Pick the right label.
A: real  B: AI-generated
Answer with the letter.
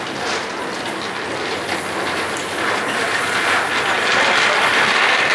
A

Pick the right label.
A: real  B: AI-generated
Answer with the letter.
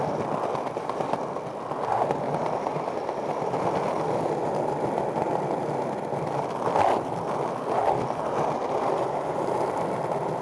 A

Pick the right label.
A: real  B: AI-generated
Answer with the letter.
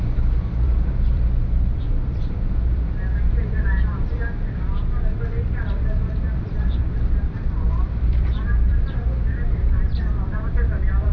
B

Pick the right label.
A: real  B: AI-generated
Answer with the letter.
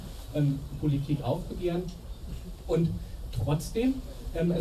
B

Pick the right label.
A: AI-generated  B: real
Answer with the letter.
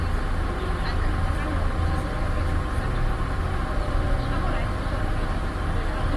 B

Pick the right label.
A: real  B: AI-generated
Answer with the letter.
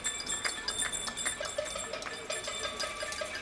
A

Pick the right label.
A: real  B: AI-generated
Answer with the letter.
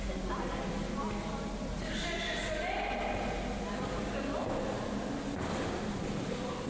A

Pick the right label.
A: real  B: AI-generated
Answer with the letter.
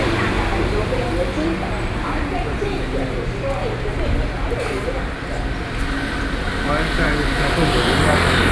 A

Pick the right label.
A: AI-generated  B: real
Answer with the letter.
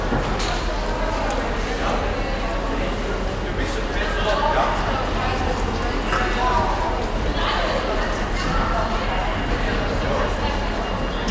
B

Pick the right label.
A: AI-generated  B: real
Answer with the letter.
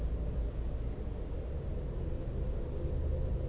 B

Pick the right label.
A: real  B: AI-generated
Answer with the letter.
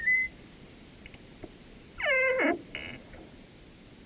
A